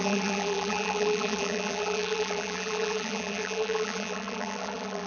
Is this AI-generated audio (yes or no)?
yes